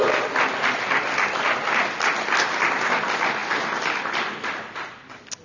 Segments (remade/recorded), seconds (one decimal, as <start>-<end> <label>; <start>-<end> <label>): 0.0-5.4 recorded